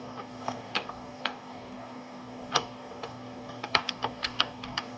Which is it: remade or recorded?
remade